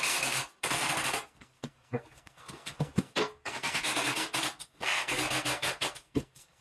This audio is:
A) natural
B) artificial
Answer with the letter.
B